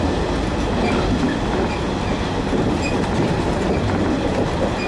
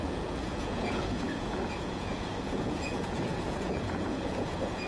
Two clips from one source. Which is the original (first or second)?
first